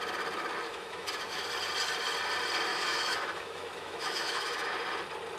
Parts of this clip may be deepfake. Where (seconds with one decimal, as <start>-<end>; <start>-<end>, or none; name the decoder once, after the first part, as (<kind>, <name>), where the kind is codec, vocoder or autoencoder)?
0.7-1.4 (autoencoder, DAC-VAE); 2.7-4.7

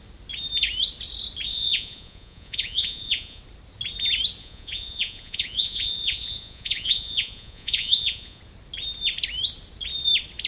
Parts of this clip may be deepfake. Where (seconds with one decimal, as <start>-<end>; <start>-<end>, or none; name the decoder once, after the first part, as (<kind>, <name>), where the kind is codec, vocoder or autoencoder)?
1.5-3.4 (vocoder, Vocos); 4.4-8.4